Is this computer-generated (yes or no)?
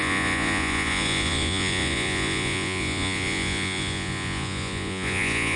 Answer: yes